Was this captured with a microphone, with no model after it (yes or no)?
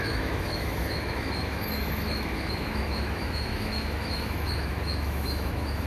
no